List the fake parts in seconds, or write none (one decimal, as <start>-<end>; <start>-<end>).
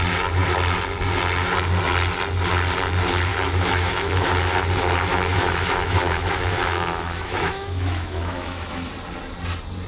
3.3-4.3; 5.1-8.9